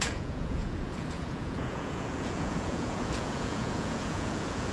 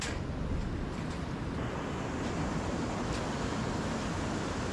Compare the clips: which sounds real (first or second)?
second